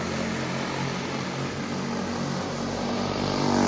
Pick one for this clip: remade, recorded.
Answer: recorded